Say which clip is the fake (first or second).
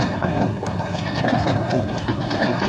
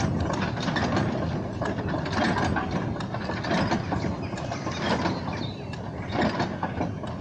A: first